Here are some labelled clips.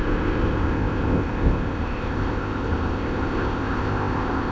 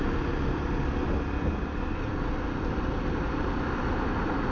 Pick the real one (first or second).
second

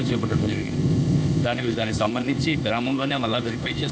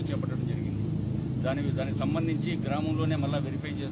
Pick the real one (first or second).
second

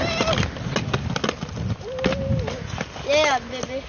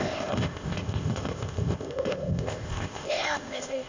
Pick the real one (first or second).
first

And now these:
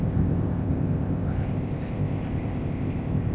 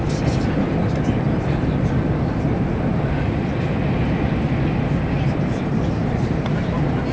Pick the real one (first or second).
second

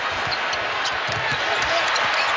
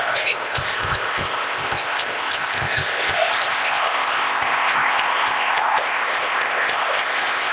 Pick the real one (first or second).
first